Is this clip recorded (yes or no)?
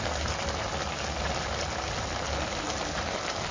yes